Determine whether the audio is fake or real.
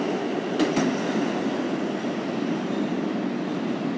real